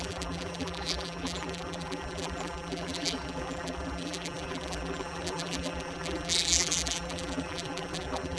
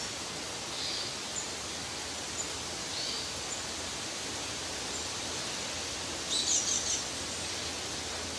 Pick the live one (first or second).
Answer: second